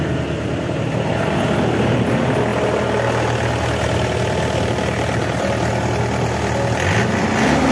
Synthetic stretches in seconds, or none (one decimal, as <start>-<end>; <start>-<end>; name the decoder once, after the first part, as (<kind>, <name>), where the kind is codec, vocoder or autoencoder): none